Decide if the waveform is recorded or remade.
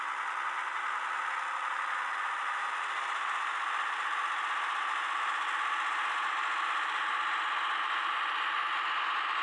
recorded